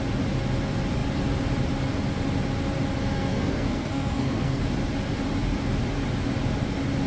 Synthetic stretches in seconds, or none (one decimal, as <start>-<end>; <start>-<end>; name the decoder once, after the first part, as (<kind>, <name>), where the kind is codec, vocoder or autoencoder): 3.1-4.6 (codec, SNAC)